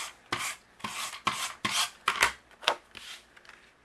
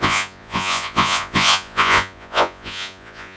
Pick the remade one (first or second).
second